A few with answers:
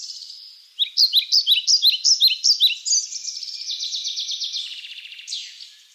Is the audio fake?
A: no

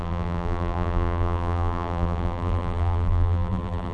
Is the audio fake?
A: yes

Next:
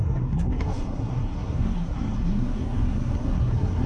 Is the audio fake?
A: yes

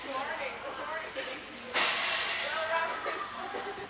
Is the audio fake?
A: no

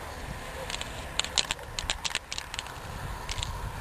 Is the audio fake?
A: no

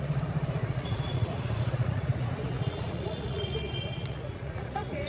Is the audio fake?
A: yes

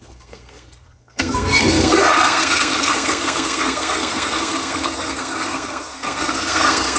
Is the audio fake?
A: yes